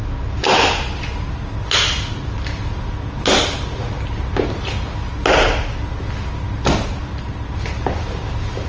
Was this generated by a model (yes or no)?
no